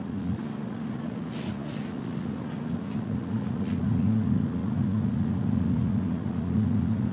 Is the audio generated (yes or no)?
yes